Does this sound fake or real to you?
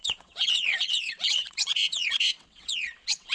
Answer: fake